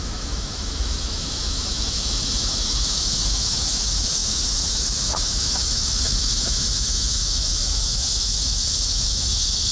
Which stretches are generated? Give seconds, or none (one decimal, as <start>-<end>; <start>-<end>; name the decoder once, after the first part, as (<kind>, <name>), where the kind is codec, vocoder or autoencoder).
0.0-9.7 (autoencoder, DAC-VAE)